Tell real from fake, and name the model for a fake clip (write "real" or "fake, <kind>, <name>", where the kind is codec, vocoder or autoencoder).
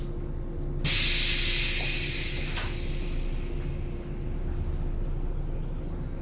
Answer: real